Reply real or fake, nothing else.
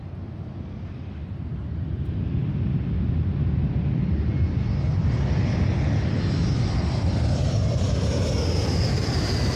real